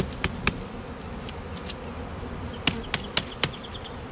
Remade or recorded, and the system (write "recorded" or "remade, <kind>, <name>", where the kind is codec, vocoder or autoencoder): recorded